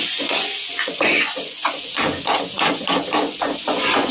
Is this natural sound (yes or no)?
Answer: no